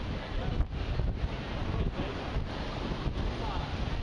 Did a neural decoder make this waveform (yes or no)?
no